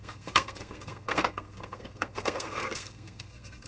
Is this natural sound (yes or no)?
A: no